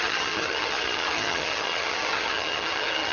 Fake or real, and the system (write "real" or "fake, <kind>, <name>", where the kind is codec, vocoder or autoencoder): fake, vocoder, HiFi-GAN